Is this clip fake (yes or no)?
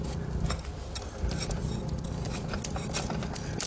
no